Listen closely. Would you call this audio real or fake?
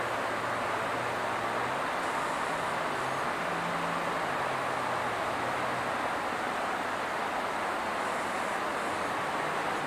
real